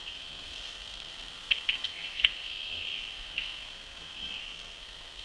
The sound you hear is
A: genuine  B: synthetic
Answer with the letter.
B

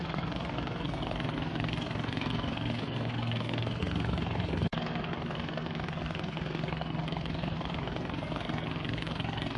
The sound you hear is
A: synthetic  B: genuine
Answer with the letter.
A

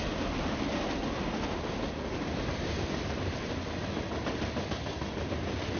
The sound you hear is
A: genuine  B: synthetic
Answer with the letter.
A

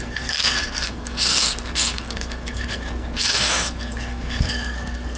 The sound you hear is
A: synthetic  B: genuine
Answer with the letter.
A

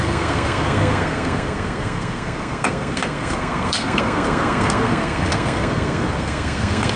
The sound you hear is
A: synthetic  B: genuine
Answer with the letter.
A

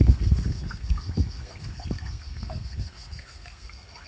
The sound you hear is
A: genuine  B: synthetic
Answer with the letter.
B